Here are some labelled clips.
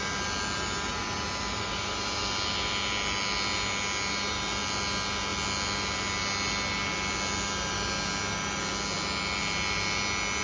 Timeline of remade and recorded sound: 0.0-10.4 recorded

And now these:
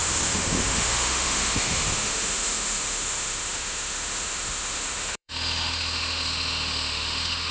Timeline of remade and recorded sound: 0.0-7.5 remade

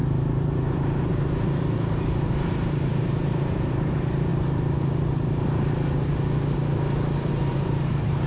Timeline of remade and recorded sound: 0.0-4.3 remade; 4.3-7.3 recorded; 7.3-8.3 remade

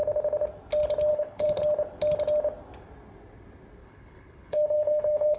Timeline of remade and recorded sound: 0.0-1.1 recorded; 1.1-1.6 remade; 1.6-3.8 recorded; 3.8-5.4 remade

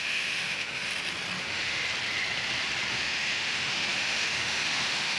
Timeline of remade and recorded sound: 0.0-0.9 remade; 0.9-1.4 recorded; 1.4-1.8 remade; 1.8-2.9 recorded; 2.9-5.2 remade

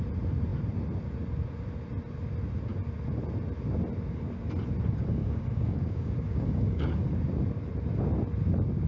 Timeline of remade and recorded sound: 0.0-5.2 recorded; 5.2-7.1 remade; 7.1-8.9 recorded